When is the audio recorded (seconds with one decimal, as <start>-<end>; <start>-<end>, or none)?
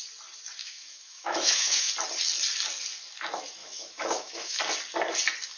0.0-0.6; 1.9-3.6; 4.6-5.6